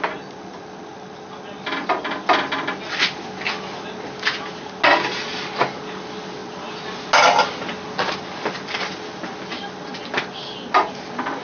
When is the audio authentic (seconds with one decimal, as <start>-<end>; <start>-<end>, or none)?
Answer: 0.0-11.4